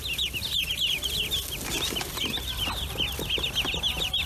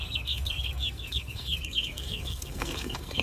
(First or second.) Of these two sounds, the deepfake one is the second